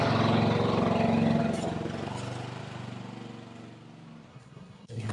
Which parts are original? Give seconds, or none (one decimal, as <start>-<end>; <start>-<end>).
0.0-4.3